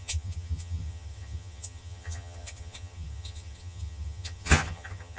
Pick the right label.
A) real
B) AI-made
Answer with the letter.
B